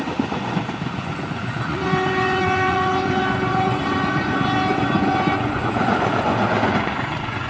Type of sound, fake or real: fake